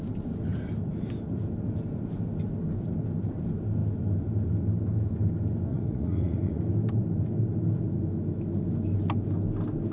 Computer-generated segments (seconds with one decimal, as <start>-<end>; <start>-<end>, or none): 5.7-6.6